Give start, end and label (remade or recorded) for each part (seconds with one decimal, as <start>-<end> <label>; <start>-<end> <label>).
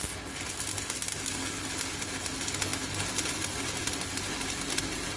0.0-5.2 recorded